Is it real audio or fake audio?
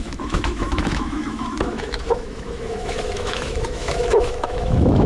fake